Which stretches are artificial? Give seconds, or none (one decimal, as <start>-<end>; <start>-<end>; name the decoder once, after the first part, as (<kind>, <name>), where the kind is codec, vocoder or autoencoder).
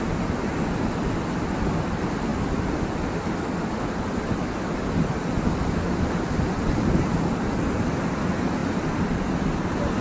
none